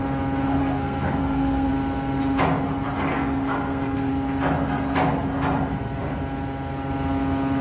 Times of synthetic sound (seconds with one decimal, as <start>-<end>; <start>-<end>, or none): 0.6-1.7; 3.1-4.1